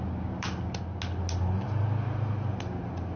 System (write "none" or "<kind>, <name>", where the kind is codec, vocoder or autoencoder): none